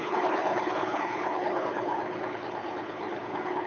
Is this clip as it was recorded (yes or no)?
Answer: no